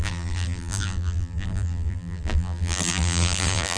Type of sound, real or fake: fake